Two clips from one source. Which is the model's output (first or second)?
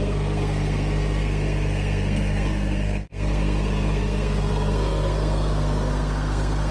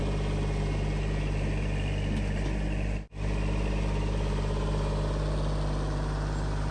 first